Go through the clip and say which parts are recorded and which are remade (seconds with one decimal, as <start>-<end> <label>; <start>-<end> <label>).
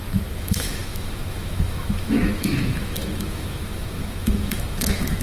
0.0-5.2 remade